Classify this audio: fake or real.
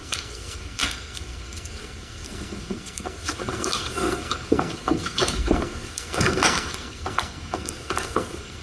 fake